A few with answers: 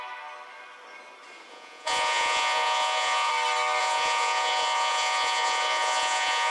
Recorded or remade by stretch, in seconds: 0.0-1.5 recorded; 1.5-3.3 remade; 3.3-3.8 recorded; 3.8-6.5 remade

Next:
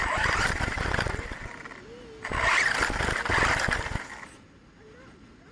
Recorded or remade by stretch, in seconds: 0.0-5.5 recorded